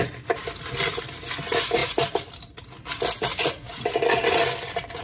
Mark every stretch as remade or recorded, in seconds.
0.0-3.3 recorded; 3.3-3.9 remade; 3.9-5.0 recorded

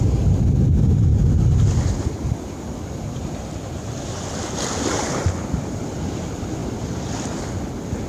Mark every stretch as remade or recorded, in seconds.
0.0-8.1 recorded

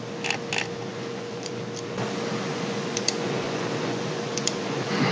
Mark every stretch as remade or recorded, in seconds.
0.0-0.9 recorded; 0.9-1.6 remade; 1.6-2.5 recorded; 2.5-5.1 remade

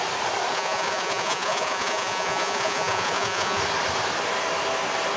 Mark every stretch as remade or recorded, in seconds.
0.0-0.5 recorded; 0.5-3.6 remade; 3.6-5.2 recorded

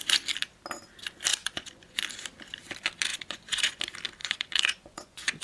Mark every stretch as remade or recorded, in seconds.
0.0-1.3 recorded; 1.3-2.0 remade; 2.0-3.1 recorded; 3.1-3.8 remade; 3.8-4.2 recorded; 4.2-5.4 remade

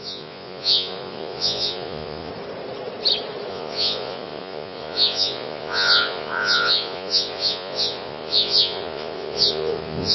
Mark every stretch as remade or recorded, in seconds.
0.0-2.3 remade; 2.3-3.5 recorded; 3.5-10.1 remade